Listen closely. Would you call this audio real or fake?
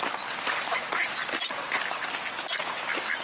real